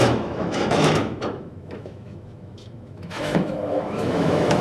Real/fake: fake